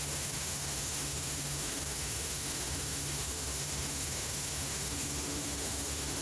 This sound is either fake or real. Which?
fake